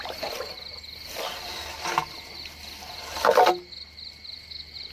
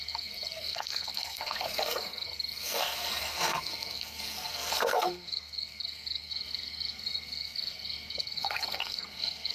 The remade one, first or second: second